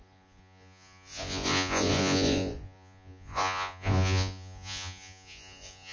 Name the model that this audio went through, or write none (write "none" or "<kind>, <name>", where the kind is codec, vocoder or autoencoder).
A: vocoder, Vocos